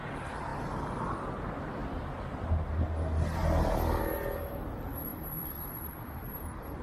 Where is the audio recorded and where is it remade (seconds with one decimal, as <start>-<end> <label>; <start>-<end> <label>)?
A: 0.0-1.8 recorded; 1.8-2.5 remade; 2.5-5.1 recorded; 5.1-5.9 remade; 5.9-6.8 recorded